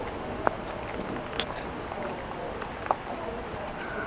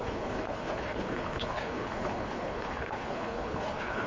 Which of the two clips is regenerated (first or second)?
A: second